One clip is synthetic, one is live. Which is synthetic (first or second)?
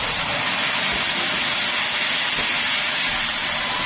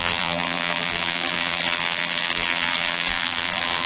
second